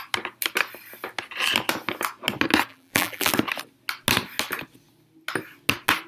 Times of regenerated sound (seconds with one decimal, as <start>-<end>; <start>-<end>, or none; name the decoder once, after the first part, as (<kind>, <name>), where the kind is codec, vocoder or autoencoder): 2.7-3.3 (vocoder, BigVGAN v2)